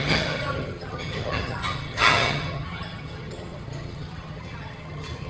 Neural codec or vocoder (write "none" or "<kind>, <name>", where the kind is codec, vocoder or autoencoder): vocoder, HiFi-GAN